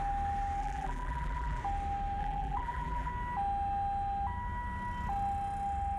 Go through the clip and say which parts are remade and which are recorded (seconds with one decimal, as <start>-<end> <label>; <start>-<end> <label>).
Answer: 0.0-0.6 recorded; 0.6-1.6 remade; 1.6-2.2 recorded; 2.2-3.1 remade; 3.1-6.0 recorded

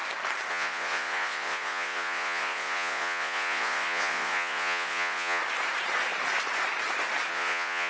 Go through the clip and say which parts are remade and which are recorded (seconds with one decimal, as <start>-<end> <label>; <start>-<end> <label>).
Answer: 0.0-0.5 recorded; 0.5-5.4 remade; 5.4-7.3 recorded; 7.3-7.9 remade

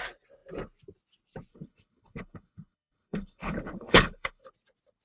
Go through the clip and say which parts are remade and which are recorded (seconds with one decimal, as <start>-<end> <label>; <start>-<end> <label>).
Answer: 0.0-1.5 recorded; 1.5-4.5 remade; 4.5-5.0 recorded

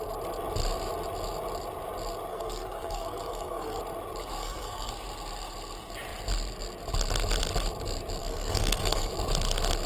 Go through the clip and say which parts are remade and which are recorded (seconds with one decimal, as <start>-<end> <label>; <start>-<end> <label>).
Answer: 0.0-2.3 recorded; 2.3-3.8 remade; 3.8-4.4 recorded; 4.4-4.9 remade; 4.9-8.2 recorded; 8.2-9.1 remade; 9.1-9.9 recorded

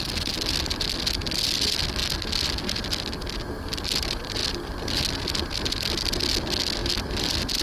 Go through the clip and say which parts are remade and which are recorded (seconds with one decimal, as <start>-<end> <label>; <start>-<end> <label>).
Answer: 0.0-7.6 recorded

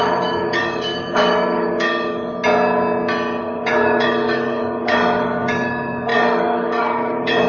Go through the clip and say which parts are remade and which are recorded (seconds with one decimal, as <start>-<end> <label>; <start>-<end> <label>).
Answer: 0.0-2.3 remade; 2.3-3.4 recorded; 3.4-7.5 remade